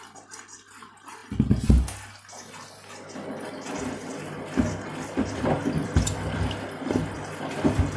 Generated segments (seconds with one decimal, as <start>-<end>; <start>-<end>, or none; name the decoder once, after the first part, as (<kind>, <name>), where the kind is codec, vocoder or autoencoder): none

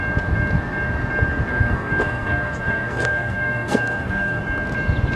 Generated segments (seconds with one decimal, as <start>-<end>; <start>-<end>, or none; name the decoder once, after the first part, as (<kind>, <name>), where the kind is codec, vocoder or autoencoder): 1.5-4.4 (codec, SNAC)

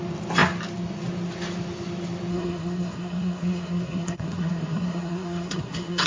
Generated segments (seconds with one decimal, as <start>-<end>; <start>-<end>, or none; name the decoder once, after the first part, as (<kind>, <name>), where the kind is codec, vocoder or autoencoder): 2.3-6.1 (codec, SNAC)

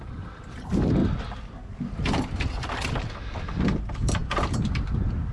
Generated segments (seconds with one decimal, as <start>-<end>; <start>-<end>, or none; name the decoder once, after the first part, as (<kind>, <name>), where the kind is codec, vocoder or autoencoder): none

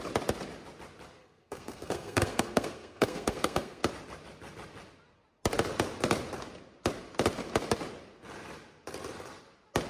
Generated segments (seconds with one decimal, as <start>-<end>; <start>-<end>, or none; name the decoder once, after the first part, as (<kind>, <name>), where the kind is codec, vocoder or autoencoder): 1.2-3.8 (codec, SNAC)

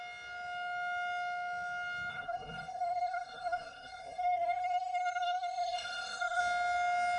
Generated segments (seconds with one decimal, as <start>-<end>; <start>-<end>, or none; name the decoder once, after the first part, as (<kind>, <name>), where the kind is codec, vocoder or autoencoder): 2.1-6.4 (codec, SNAC)

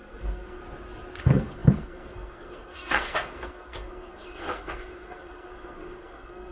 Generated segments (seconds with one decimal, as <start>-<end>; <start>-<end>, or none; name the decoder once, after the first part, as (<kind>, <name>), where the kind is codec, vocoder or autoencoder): 0.0-0.6 (codec, SNAC); 1.2-6.5